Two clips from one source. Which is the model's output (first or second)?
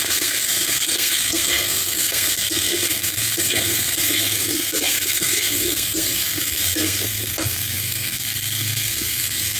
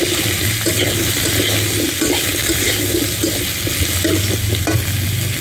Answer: first